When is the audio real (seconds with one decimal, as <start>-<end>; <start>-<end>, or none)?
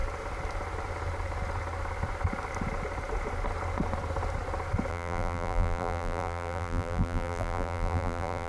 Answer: 0.0-4.9